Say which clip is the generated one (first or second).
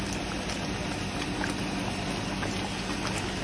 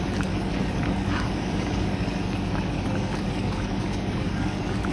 second